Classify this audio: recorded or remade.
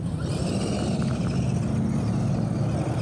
recorded